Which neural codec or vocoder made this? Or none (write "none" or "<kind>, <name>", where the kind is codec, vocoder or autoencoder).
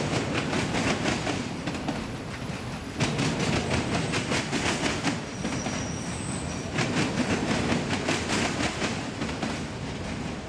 none